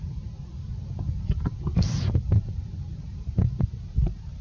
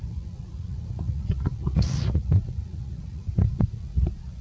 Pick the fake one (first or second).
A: second